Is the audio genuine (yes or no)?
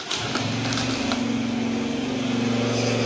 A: yes